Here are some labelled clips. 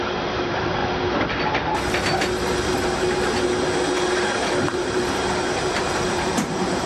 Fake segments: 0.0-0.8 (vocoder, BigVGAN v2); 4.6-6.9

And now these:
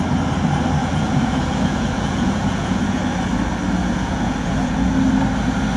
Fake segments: 0.8-3.0 (vocoder, Vocos); 3.8-4.9

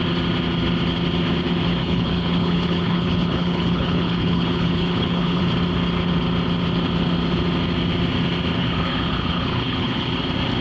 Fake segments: 1.8-5.4 (codec, HILCodec); 8.6-10.2

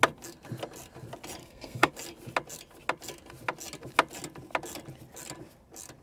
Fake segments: 1.4-1.9 (codec, SNAC)

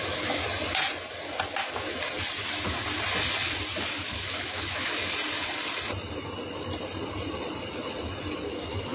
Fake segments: 0.0-0.4 (autoencoder, DAC-VAE); 4.0-5.0; 8.5-8.9